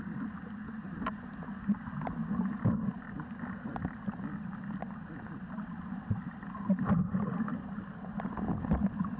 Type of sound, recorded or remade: recorded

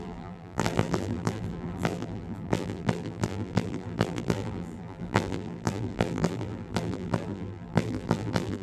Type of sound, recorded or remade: remade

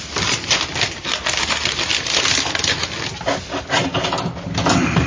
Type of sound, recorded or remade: recorded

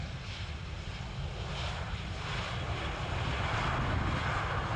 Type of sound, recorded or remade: recorded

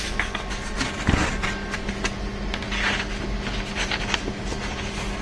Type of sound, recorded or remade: recorded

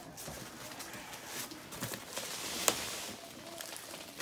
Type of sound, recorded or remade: recorded